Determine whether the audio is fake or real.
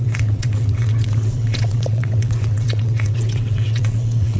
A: fake